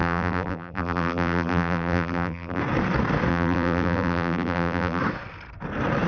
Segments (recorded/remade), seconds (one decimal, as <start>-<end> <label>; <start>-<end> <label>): 0.0-2.6 remade; 2.6-3.3 recorded; 3.3-5.0 remade; 5.0-6.1 recorded